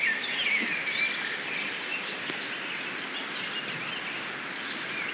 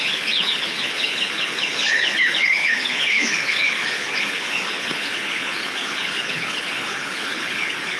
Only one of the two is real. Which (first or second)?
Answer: first